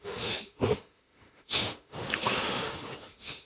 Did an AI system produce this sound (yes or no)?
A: yes